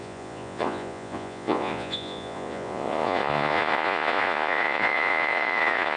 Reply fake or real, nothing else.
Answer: fake